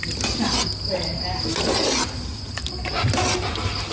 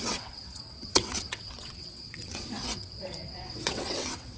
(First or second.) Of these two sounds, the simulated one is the second